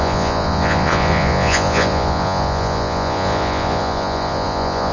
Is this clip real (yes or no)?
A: no